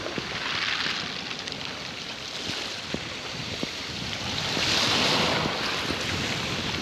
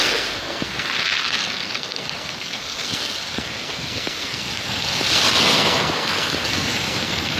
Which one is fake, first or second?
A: second